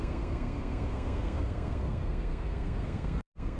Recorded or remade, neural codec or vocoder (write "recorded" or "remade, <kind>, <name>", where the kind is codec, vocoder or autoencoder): remade, codec, SNAC